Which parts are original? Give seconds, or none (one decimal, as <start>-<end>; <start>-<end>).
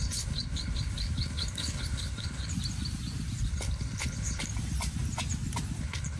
2.5-3.5; 4.5-5.8